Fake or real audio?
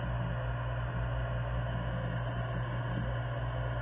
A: real